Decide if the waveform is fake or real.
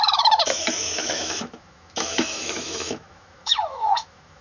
fake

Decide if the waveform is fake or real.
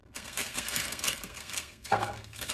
fake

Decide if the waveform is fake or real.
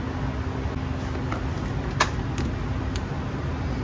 real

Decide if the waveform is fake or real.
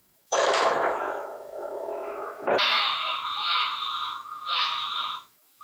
fake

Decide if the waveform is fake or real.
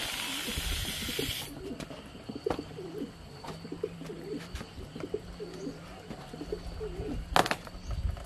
real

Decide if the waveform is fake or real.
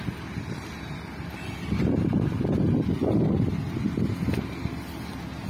real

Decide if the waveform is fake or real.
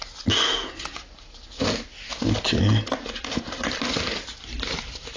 real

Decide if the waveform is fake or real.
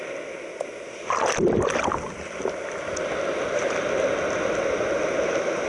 real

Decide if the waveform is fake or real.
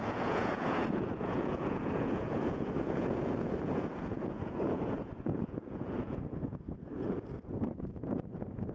fake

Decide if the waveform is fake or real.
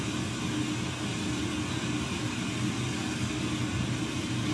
real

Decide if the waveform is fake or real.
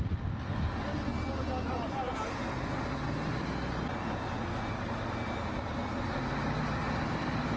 real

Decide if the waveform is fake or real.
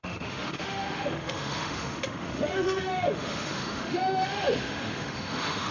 fake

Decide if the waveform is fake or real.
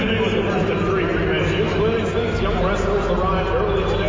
real